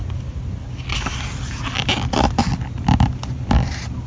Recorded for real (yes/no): yes